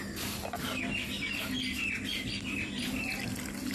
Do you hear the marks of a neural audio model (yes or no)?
no